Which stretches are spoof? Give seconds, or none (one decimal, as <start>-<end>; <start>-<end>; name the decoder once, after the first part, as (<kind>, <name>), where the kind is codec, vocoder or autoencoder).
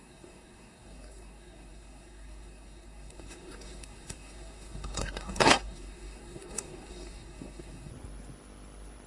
0.0-7.9 (codec, SNAC)